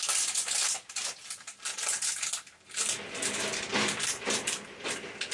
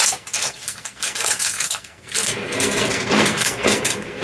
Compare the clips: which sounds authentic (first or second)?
first